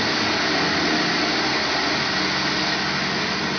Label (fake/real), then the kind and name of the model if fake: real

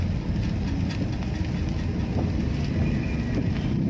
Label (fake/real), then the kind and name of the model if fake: real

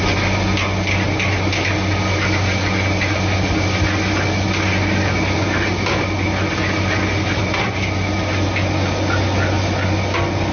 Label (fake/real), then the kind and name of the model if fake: real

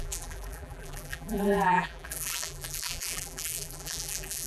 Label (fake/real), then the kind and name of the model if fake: fake, vocoder, BigVGAN v2